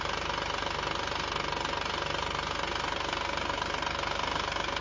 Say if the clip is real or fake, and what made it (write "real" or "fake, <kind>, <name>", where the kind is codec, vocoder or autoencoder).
real